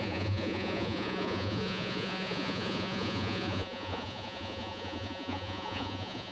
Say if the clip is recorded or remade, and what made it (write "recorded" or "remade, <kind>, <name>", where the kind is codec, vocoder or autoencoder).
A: remade, vocoder, Vocos